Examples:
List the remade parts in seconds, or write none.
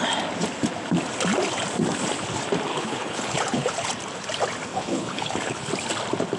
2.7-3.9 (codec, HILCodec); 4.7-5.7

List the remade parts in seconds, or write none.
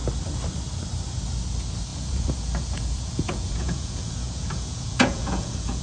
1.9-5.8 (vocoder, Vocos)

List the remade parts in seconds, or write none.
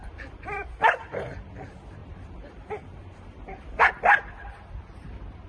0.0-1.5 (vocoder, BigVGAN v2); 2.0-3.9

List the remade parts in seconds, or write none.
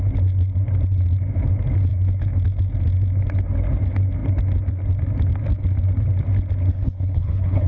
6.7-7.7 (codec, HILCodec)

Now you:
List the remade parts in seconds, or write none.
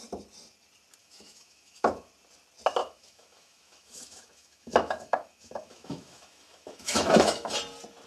1.0-2.1 (autoencoder, DAC-VAE); 2.8-7.5